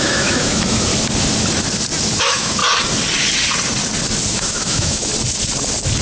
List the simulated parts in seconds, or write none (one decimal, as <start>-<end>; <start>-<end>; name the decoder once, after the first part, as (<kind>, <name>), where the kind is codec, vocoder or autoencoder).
0.0-0.9 (autoencoder, DAC-VAE); 2.2-2.6; 4.3-5.1